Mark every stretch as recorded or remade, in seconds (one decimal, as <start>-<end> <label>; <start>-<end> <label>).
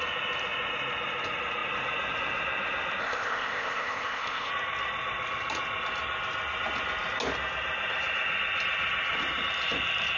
0.0-3.0 recorded; 3.0-4.5 remade; 4.5-10.2 recorded